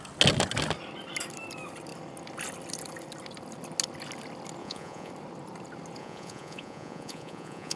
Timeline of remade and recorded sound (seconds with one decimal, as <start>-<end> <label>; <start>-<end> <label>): 0.0-4.6 recorded; 4.6-5.1 remade; 5.1-6.0 recorded; 6.0-7.8 remade